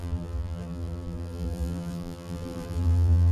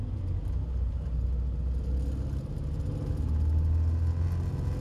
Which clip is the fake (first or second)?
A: first